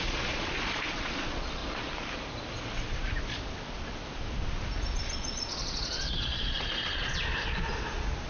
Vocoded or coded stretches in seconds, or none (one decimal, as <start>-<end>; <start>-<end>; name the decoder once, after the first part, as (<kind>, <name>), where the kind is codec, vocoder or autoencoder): 0.0-1.6 (vocoder, Vocos); 4.7-8.3